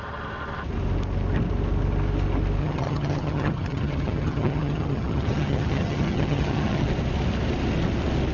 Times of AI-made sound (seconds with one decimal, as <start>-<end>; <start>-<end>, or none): 2.6-6.9